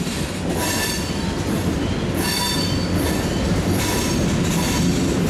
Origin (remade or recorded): recorded